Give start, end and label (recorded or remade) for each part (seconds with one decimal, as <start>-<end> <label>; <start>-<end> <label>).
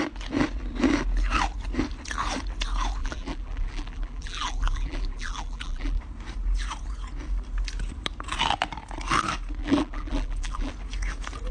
0.0-3.0 recorded; 3.0-6.0 remade; 6.0-9.6 recorded; 9.6-10.7 remade; 10.7-11.5 recorded